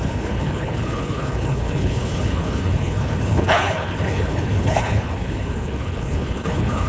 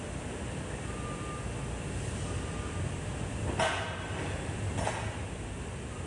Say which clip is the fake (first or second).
first